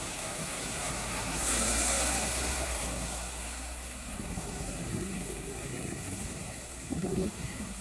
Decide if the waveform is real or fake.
fake